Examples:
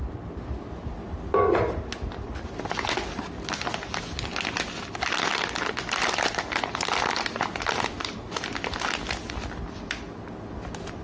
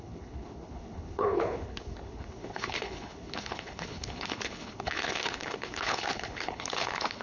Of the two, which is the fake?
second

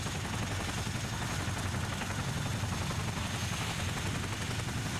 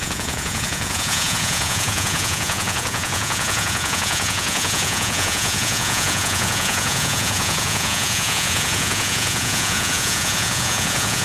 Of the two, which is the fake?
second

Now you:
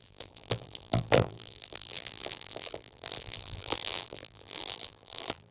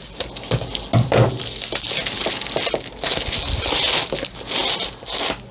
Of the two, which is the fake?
first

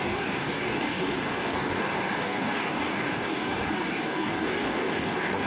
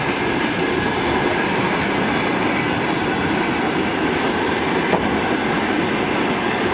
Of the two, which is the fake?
first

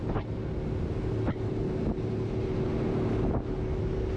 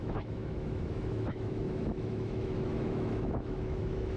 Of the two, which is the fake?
second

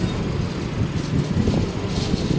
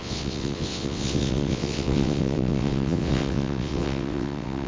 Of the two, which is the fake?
second